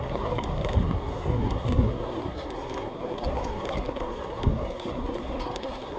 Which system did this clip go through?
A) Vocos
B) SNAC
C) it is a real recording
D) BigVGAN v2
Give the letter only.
B